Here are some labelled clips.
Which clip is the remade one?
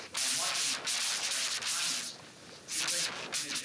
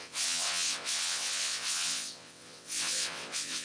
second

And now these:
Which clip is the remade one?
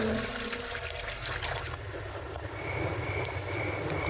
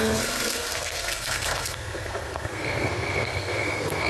second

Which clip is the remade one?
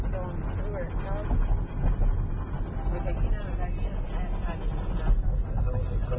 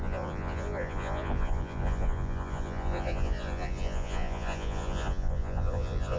second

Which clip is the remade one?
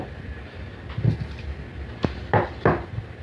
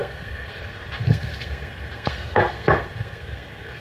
second